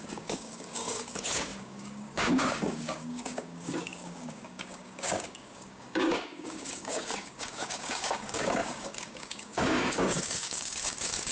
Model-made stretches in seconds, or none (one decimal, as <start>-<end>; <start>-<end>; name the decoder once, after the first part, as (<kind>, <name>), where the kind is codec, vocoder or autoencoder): 0.0-11.3 (codec, DAC)